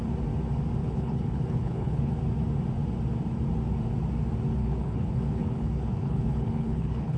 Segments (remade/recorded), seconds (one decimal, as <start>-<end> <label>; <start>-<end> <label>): 0.0-0.8 recorded; 0.8-2.2 remade; 2.2-4.6 recorded; 4.6-7.2 remade